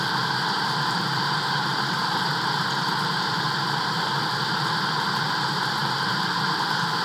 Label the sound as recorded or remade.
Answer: recorded